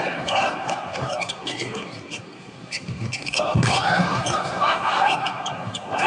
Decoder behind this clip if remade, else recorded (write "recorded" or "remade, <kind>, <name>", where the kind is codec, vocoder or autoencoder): remade, codec, SNAC